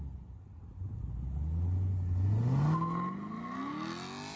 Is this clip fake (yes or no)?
no